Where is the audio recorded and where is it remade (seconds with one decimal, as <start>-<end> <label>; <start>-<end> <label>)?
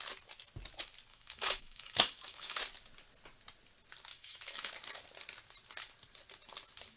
0.0-1.1 recorded; 1.1-2.6 remade; 2.6-4.1 recorded; 4.1-4.7 remade; 4.7-7.0 recorded